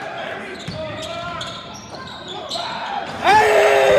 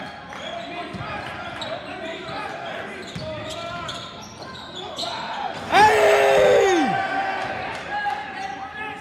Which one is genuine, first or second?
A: second